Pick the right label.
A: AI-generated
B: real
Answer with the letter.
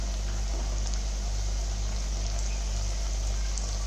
B